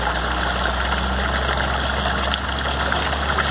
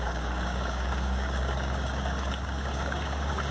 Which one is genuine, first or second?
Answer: first